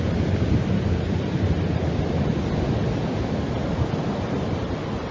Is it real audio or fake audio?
real